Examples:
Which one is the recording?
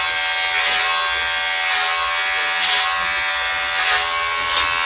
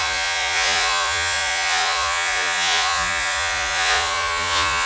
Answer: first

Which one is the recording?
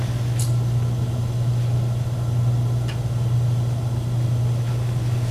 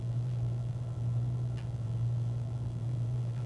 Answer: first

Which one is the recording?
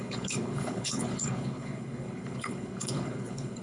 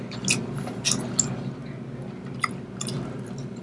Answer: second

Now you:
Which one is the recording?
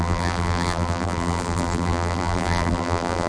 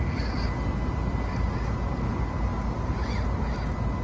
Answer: second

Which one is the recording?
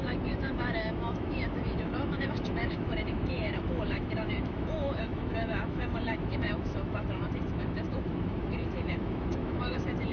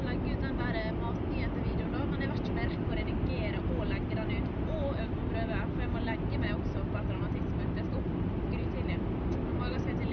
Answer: second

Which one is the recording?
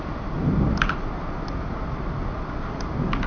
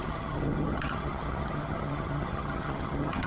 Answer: first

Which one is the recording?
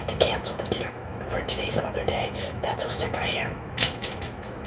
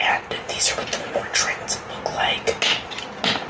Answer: second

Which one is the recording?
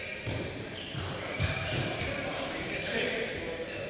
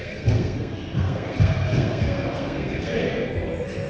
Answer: first